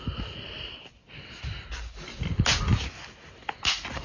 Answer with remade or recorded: recorded